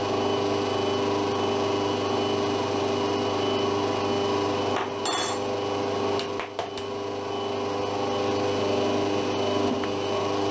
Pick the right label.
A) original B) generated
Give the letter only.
A